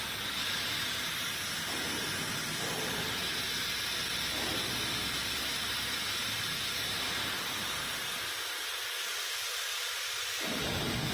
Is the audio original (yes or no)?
yes